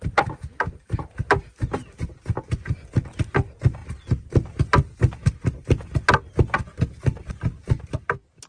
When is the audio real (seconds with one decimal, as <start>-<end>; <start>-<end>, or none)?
0.0-8.5